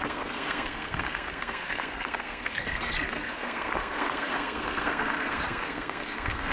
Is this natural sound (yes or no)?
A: no